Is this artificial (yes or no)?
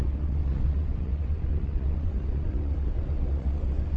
yes